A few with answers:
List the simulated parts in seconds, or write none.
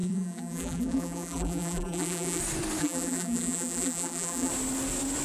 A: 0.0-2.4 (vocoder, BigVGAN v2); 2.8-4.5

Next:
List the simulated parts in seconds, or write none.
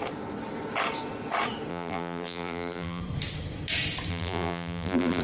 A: 1.7-3.0 (vocoder, BigVGAN v2); 4.1-5.2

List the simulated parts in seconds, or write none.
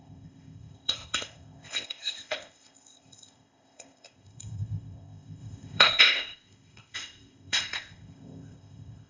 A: 0.0-9.1 (codec, ZipCodec)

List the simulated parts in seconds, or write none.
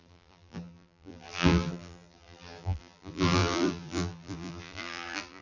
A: 0.0-5.4 (vocoder, BigVGAN v2)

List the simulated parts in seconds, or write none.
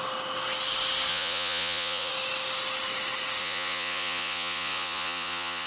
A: 1.1-2.1 (vocoder, Vocos); 3.4-5.7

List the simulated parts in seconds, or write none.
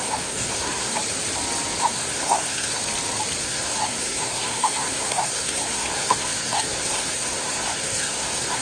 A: 0.0-1.0 (codec, SNAC); 1.8-2.8; 3.4-8.6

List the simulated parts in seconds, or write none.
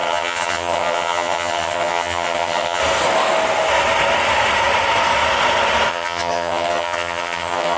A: 0.0-2.8 (vocoder, HiFi-GAN); 5.9-7.8